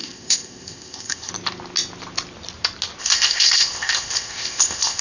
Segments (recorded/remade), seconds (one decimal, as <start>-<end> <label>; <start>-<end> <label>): 0.0-1.3 remade; 1.3-3.0 recorded; 3.0-5.0 remade